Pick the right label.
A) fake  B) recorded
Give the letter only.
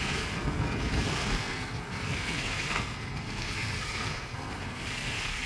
A